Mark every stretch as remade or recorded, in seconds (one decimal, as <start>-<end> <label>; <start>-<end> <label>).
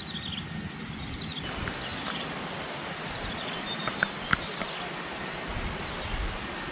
0.0-1.9 recorded; 1.9-5.9 remade; 5.9-6.7 recorded